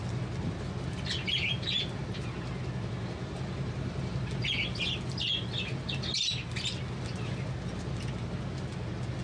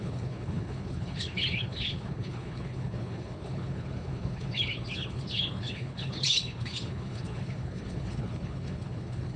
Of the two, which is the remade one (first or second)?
second